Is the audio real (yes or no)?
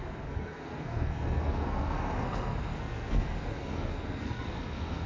no